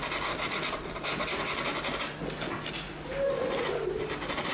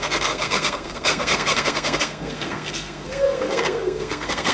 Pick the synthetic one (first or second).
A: second